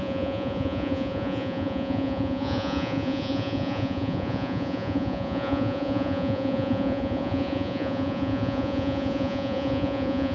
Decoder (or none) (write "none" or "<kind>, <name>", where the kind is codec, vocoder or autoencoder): vocoder, Vocos